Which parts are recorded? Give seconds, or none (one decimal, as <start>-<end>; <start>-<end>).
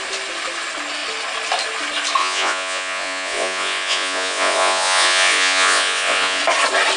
0.0-2.2; 6.4-7.0